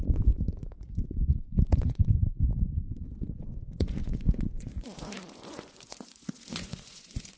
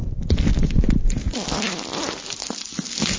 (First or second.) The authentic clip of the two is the second